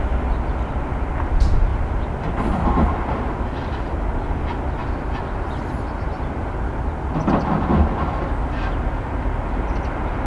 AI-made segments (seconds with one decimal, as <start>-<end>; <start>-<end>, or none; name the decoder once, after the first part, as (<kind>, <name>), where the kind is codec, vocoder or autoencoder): none